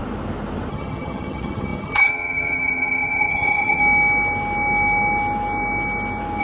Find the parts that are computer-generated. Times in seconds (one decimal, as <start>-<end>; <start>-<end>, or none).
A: 0.7-3.8